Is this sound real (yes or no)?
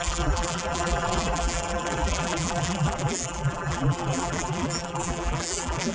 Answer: no